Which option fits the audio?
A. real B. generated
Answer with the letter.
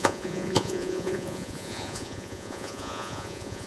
B